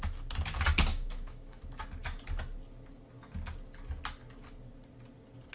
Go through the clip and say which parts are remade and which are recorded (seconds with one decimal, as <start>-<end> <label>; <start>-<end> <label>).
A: 0.0-0.9 recorded; 0.9-1.6 remade; 1.6-5.5 recorded